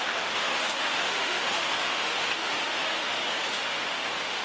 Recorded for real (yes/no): no